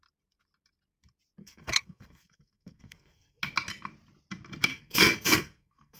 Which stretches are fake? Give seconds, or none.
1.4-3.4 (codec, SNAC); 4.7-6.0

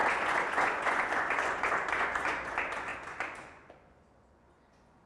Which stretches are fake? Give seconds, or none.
0.0-5.1 (vocoder, Vocos)